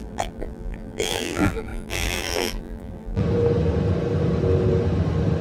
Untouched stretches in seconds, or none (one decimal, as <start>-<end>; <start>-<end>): 3.2-5.4